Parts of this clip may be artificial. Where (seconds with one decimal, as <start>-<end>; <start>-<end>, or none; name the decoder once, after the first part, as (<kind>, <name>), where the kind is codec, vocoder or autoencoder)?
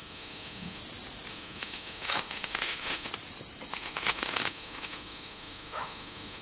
0.0-0.8 (autoencoder, DAC-VAE); 1.3-3.1; 3.7-6.4